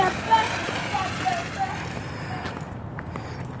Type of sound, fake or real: real